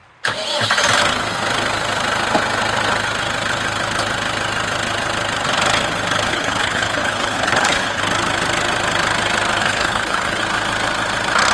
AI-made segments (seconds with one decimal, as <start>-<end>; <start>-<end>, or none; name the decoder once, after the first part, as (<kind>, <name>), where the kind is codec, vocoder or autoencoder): 6.3-8.0 (codec, HILCodec); 9.6-10.4